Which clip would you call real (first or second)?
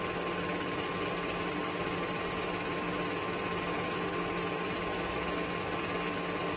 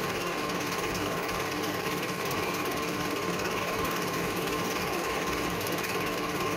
first